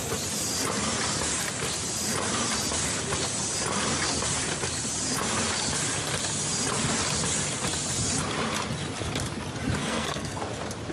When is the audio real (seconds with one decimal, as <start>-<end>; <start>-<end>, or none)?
0.0-9.8; 10.4-10.9